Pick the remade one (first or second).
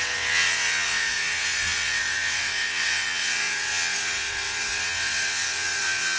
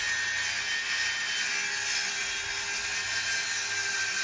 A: first